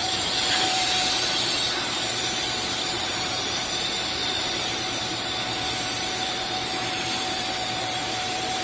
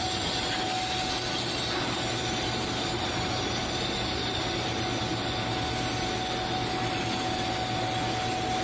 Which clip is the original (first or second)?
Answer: second